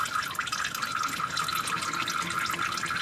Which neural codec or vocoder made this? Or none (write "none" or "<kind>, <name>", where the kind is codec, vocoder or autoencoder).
none